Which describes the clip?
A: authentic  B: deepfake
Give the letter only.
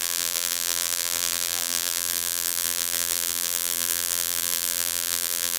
B